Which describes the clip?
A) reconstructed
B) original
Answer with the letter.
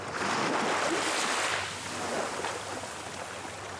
B